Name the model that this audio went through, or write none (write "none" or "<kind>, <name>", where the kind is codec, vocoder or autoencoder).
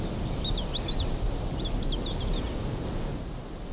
none